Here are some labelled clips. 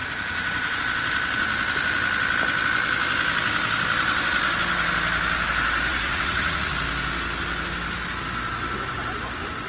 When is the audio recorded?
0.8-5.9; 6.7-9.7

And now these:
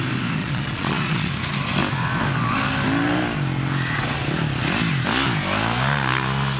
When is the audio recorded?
0.0-0.4; 1.3-6.6

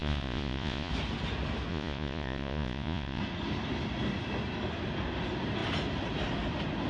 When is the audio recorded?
0.9-1.7; 3.2-6.9

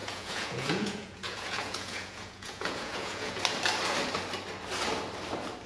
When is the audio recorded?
3.4-5.7

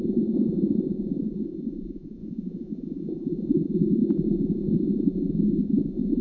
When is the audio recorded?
none

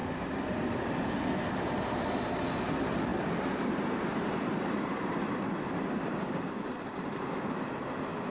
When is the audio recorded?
0.0-8.3

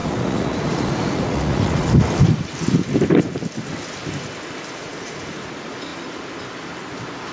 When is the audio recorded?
1.9-4.8; 5.4-7.3

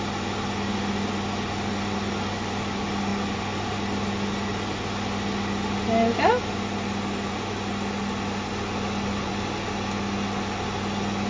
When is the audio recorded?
0.0-11.3